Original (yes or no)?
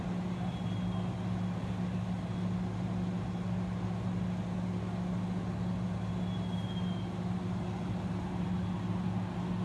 yes